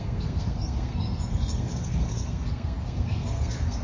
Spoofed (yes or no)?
yes